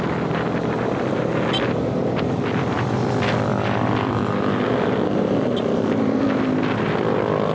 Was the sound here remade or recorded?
remade